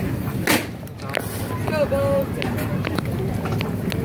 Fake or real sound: real